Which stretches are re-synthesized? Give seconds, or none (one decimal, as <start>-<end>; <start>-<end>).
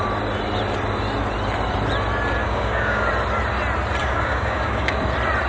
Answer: 2.4-3.1; 4.0-5.0